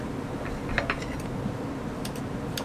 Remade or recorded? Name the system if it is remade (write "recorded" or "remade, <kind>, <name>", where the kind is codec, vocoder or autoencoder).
recorded